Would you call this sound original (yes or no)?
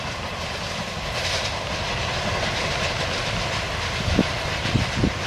yes